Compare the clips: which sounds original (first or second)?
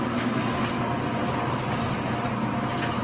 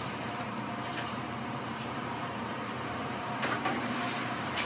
first